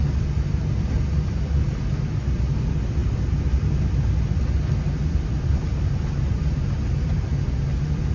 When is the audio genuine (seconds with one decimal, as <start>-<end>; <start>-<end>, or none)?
0.0-8.1